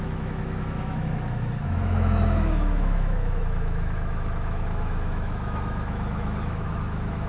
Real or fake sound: fake